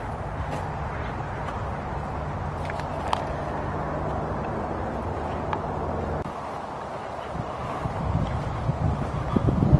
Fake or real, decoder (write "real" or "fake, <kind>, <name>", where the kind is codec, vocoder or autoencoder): real